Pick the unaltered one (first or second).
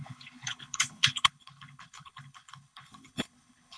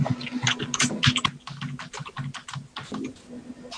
second